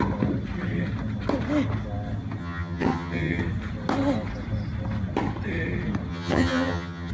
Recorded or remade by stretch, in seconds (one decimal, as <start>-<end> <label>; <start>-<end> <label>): 0.0-2.4 recorded; 2.4-3.4 remade; 3.4-6.1 recorded; 6.1-7.1 remade